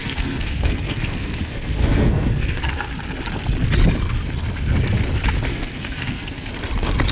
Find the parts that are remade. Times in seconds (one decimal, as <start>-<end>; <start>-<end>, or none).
0.0-2.7; 5.5-6.5